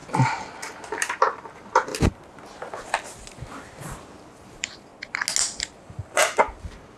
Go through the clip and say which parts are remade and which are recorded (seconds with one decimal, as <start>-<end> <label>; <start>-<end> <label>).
0.0-0.6 recorded; 0.6-1.9 remade; 1.9-4.3 recorded; 4.3-4.9 remade; 4.9-5.8 recorded; 5.8-7.0 remade